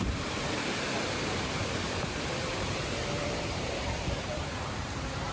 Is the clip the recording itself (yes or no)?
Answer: no